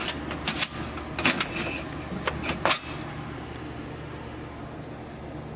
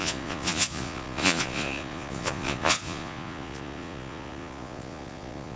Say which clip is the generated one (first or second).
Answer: second